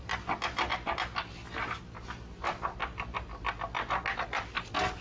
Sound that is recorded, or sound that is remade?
recorded